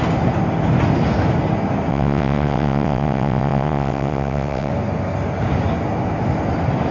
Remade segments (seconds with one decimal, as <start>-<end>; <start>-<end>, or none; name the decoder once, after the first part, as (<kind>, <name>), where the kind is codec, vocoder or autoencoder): 1.9-4.7 (vocoder, WaveNeXt)